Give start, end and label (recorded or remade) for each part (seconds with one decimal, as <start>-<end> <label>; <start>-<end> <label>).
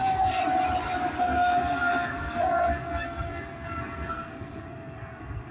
0.0-0.4 remade; 0.4-1.2 recorded; 1.2-5.5 remade